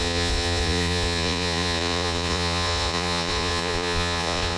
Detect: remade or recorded remade